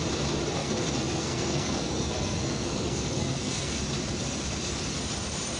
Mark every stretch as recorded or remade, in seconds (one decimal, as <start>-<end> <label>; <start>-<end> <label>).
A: 0.0-0.6 recorded; 0.6-3.8 remade; 3.8-5.6 recorded